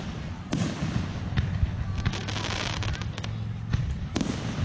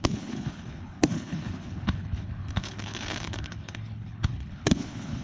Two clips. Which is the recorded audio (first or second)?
first